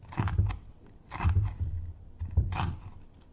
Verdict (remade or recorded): recorded